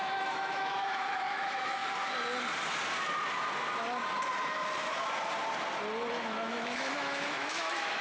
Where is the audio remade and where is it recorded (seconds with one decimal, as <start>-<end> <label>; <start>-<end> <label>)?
0.0-1.8 remade; 1.8-6.1 recorded; 6.1-8.0 remade

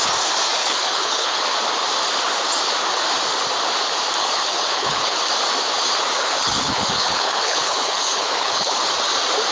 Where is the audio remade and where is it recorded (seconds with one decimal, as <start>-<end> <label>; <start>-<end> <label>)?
0.0-0.6 recorded; 0.6-1.4 remade; 1.4-4.2 recorded; 4.2-5.2 remade; 5.2-6.2 recorded; 6.2-8.9 remade; 8.9-9.5 recorded